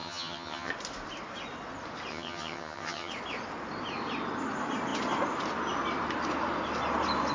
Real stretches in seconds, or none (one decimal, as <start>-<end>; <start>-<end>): 0.7-2.1; 3.1-7.3